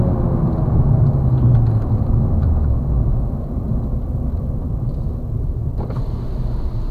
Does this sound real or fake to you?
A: real